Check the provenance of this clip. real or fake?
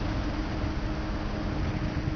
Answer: real